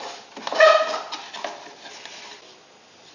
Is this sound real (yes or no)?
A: yes